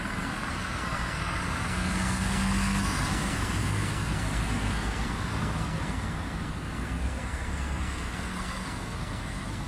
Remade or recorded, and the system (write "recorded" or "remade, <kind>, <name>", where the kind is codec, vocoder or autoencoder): remade, codec, SNAC